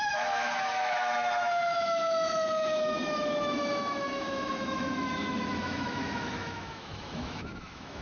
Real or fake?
fake